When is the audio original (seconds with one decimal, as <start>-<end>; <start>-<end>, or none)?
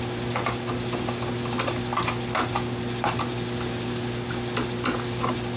0.0-5.6